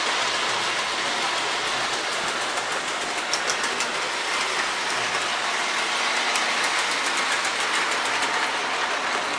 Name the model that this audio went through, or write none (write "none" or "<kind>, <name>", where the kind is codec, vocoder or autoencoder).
none